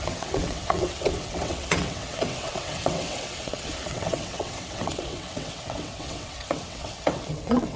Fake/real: fake